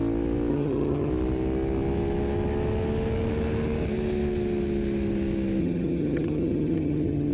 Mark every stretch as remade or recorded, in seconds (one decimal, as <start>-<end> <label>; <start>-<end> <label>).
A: 0.0-0.5 recorded; 0.5-1.1 remade; 1.1-5.6 recorded; 5.6-7.3 remade